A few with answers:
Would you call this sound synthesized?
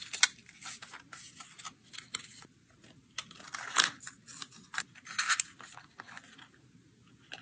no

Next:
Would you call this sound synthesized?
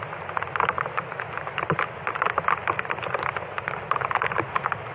no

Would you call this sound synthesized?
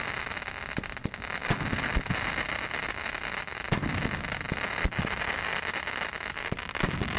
no